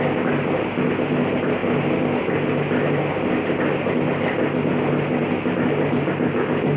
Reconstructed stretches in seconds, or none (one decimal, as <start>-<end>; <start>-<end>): none